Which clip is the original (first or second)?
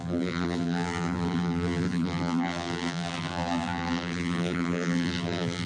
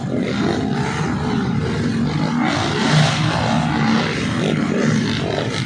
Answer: second